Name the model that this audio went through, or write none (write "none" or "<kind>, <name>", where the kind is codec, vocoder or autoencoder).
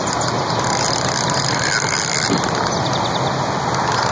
none